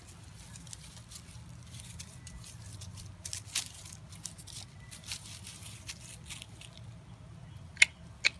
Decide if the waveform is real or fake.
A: real